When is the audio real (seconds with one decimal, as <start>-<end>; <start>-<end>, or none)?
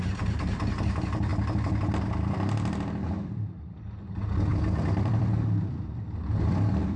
none